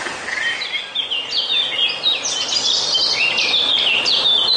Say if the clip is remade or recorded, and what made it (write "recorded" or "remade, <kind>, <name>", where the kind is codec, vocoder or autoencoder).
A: recorded